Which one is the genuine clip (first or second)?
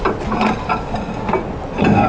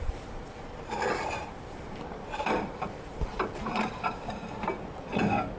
first